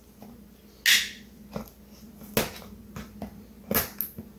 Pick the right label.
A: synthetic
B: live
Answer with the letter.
B